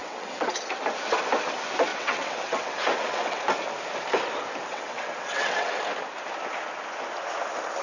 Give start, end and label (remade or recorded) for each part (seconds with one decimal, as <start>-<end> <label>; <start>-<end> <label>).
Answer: 0.0-0.5 remade; 0.5-1.9 recorded; 1.9-3.4 remade; 3.4-4.7 recorded; 4.7-5.8 remade; 5.8-7.8 recorded

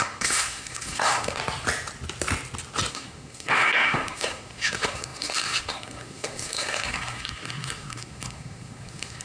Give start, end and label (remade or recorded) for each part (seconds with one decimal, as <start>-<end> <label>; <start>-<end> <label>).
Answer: 0.0-1.4 remade; 1.4-2.9 recorded; 2.9-9.2 remade